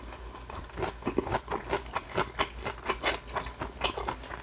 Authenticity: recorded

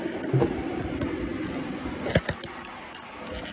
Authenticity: recorded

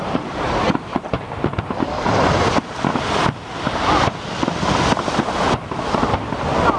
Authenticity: recorded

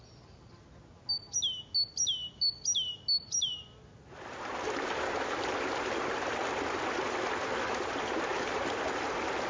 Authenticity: recorded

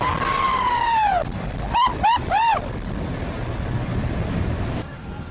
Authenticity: recorded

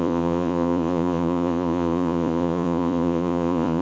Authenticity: remade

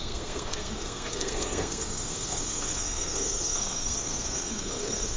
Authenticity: remade